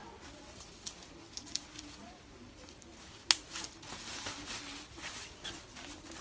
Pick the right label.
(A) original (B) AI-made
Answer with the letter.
A